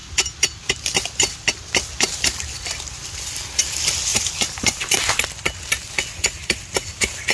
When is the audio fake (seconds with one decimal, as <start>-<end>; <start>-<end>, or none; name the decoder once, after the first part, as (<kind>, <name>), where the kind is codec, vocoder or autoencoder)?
4.1-4.8 (vocoder, BigVGAN v2)